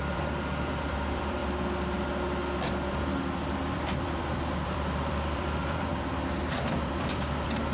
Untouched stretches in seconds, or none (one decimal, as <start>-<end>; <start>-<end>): 1.4-3.7